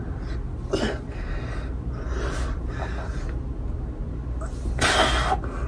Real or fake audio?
real